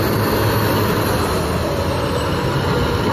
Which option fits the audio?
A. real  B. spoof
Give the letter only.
A